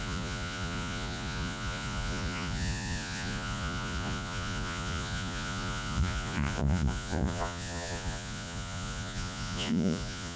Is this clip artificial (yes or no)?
yes